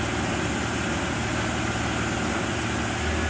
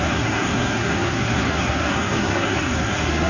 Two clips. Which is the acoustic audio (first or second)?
first